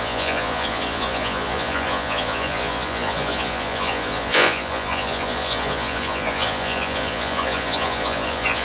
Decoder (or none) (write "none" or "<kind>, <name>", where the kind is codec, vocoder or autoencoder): vocoder, Vocos